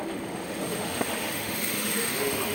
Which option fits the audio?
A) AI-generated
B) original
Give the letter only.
A